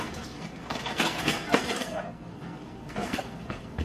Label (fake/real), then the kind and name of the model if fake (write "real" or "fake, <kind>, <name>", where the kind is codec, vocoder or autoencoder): fake, codec, SNAC